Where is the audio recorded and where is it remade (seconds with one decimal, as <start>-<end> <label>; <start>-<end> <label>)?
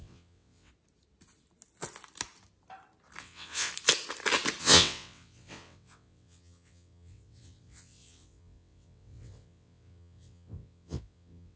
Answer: 0.0-0.7 remade; 0.7-3.2 recorded; 3.2-3.7 remade; 3.7-4.6 recorded; 4.6-11.6 remade